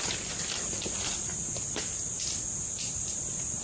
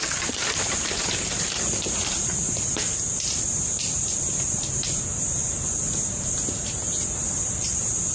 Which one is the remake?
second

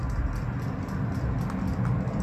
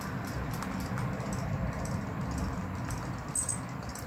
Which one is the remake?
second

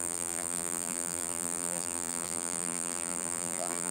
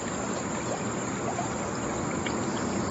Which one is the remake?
first